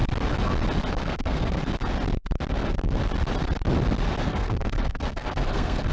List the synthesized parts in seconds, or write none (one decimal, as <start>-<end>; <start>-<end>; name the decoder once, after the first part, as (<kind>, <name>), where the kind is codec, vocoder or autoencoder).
0.9-1.6 (codec, SNAC); 2.5-3.0; 4.3-5.9